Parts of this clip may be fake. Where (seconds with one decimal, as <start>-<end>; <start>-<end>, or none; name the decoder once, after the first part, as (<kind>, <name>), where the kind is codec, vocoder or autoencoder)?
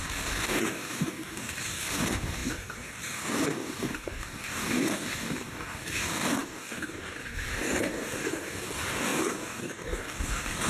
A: 0.0-10.7 (codec, DAC)